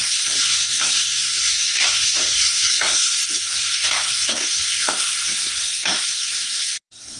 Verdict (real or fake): fake